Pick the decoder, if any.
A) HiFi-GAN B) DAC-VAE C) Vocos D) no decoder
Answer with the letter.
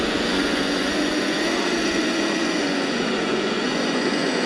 C